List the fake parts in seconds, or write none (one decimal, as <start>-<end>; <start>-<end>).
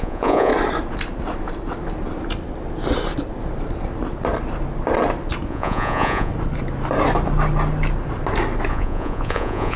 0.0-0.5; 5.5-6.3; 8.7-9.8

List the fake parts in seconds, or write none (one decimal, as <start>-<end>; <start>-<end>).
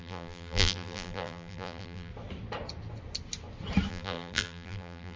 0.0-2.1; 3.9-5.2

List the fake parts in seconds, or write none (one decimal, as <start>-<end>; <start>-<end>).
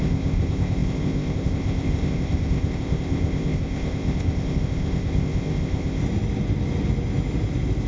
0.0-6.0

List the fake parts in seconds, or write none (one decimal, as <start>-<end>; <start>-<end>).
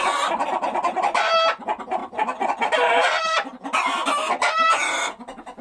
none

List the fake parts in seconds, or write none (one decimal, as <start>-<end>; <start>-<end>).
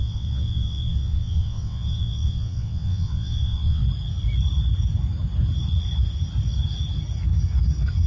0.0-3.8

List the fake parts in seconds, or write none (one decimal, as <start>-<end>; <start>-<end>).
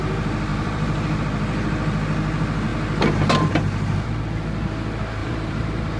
0.5-1.2; 5.2-6.0